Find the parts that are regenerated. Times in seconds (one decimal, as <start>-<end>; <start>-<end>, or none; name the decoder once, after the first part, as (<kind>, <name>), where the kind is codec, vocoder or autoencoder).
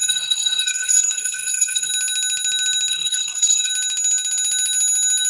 0.0-1.9 (codec, SNAC); 2.9-3.7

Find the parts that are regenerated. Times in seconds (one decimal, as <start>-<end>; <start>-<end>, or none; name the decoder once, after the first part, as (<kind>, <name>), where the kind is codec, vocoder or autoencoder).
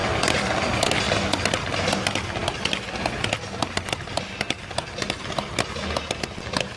none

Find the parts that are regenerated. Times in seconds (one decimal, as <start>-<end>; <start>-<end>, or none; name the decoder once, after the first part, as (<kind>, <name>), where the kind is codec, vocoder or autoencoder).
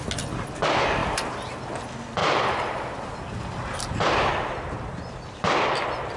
1.0-1.6 (vocoder, BigVGAN v2); 2.2-4.3